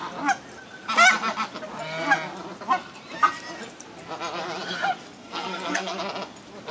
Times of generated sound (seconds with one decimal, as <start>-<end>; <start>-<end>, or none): 5.2-6.0

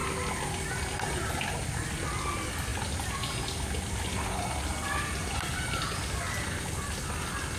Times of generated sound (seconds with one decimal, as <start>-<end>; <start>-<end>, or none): none

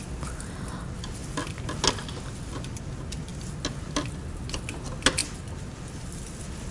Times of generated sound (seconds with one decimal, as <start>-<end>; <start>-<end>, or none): 5.2-6.2

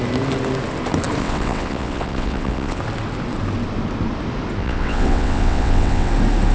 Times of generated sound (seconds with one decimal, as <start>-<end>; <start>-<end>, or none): 1.2-2.8; 4.6-6.1

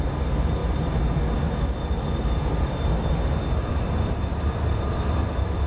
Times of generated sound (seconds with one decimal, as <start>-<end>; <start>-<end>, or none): none

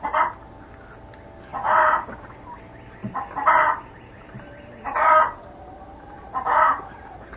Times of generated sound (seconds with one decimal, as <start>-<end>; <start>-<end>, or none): 3.0-7.4

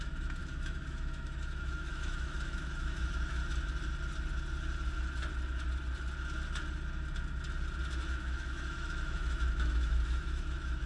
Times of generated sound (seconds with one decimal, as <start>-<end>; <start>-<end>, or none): 0.0-3.4; 8.1-10.9